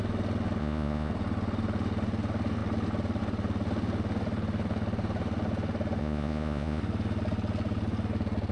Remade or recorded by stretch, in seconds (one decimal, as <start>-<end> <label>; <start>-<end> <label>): 0.0-0.6 recorded; 0.6-1.1 remade; 1.1-6.0 recorded; 6.0-6.8 remade; 6.8-8.5 recorded